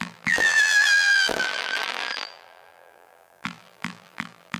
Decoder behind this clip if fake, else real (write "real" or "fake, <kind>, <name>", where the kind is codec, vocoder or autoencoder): fake, vocoder, BigVGAN v2